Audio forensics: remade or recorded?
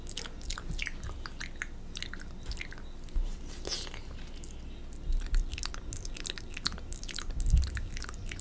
recorded